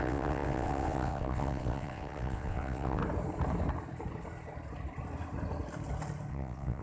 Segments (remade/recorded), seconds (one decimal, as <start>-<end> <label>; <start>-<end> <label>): 0.0-3.0 remade; 3.0-6.3 recorded; 6.3-6.8 remade